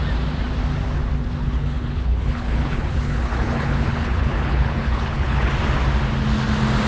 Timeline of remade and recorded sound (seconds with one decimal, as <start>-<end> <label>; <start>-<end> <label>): 0.0-1.4 recorded; 1.4-5.5 remade; 5.5-6.9 recorded